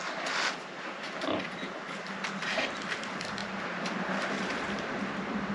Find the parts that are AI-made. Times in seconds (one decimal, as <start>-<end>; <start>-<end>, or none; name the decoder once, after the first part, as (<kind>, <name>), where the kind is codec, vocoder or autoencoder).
3.4-5.0 (vocoder, BigVGAN v2)